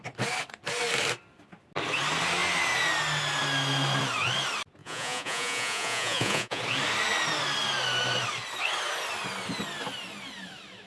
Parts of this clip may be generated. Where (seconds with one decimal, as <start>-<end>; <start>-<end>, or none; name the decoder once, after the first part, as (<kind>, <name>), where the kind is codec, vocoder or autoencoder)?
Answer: 4.8-6.6 (vocoder, Vocos)